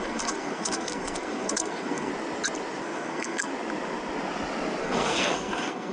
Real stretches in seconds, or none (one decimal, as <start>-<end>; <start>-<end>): 2.1-2.8; 3.5-4.8